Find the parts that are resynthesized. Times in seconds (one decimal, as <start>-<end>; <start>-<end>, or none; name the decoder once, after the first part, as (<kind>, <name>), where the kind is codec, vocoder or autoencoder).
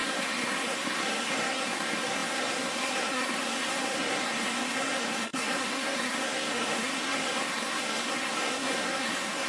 0.0-9.5 (codec, SNAC)